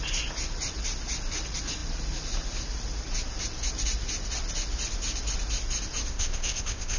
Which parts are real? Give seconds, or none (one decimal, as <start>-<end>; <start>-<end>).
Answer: 0.0-6.1